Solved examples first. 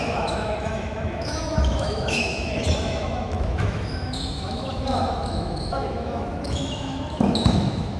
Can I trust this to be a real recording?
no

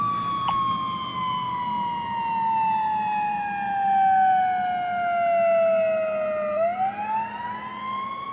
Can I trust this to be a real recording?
yes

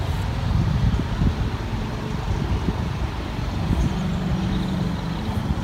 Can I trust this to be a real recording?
yes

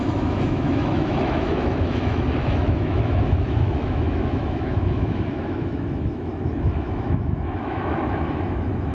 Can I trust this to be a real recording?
no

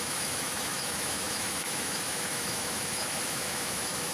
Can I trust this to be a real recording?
no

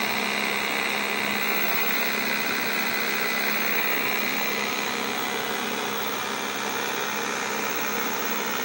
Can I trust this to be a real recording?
yes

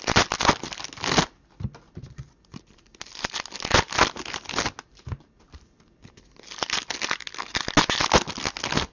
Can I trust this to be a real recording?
yes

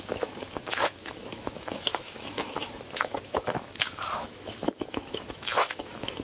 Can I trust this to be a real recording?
no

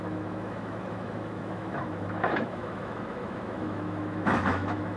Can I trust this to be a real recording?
no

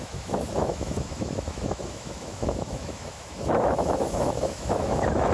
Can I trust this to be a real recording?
no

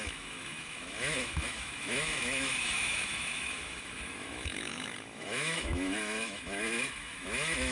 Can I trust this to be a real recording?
no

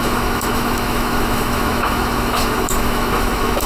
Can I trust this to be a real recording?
no